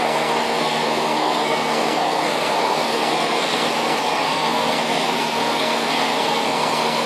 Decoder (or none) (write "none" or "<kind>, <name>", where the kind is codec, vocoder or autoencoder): codec, SNAC